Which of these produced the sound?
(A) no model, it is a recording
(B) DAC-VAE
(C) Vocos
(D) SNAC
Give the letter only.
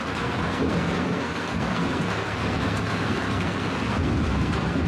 D